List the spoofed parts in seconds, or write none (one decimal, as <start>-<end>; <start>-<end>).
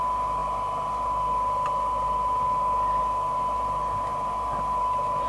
none